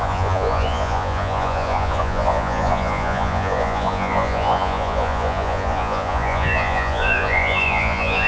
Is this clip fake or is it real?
fake